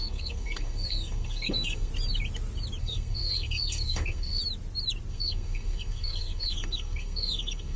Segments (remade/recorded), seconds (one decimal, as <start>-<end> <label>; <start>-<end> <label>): 0.0-1.9 remade; 1.9-2.8 recorded; 2.8-4.4 remade; 4.4-5.1 recorded; 5.1-7.8 remade